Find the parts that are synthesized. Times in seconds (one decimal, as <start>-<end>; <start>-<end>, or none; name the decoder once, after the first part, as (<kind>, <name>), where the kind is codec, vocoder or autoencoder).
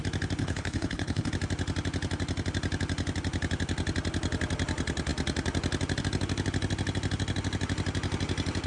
0.4-1.3 (codec, HILCodec)